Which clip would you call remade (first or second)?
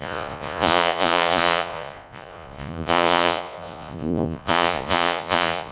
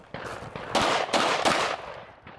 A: first